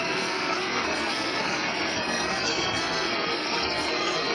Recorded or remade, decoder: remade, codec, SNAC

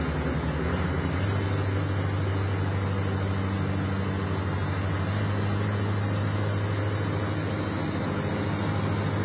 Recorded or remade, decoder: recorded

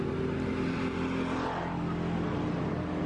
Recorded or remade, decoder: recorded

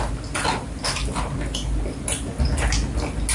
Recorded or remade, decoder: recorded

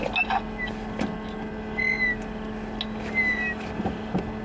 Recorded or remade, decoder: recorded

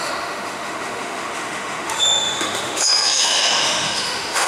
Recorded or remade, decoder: remade, autoencoder, DAC-VAE